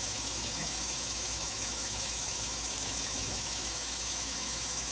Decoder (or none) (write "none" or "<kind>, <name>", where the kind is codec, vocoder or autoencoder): autoencoder, DAC-VAE